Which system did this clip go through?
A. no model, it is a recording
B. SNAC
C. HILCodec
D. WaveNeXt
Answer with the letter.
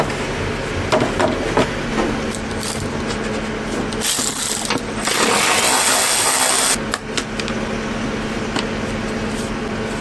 A